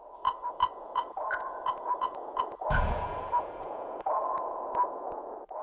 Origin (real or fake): fake